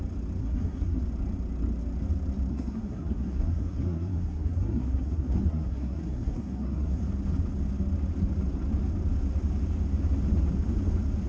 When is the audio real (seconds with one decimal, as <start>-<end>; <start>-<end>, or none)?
0.0-0.4; 1.0-2.5; 7.0-11.3

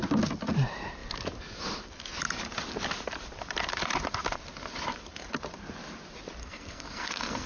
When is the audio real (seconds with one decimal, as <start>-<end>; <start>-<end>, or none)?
0.0-6.4

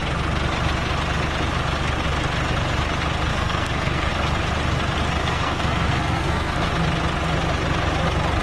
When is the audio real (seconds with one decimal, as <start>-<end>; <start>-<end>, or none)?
0.0-3.3; 4.1-5.2; 6.7-8.4

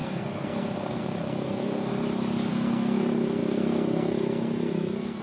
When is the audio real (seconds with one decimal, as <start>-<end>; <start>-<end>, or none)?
1.9-2.5